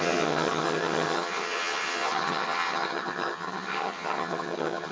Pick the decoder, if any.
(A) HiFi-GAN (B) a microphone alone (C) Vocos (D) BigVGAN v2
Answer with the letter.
A